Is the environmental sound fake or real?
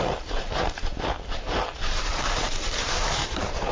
fake